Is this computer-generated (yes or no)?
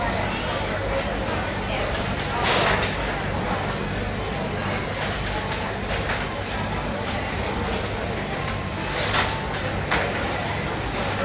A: no